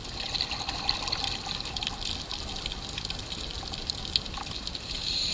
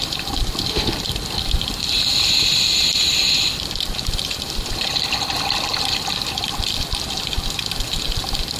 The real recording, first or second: first